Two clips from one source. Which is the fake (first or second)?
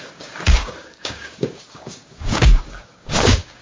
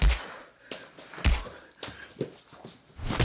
first